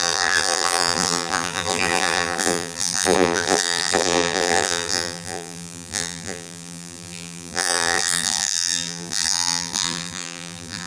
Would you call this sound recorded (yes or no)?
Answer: no